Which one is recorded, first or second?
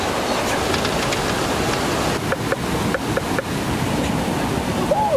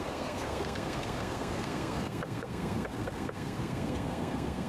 first